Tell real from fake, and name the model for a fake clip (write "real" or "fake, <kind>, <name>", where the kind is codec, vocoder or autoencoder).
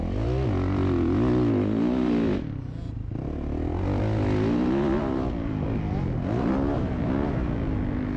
real